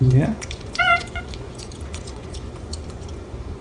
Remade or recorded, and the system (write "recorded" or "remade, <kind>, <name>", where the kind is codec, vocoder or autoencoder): remade, vocoder, Vocos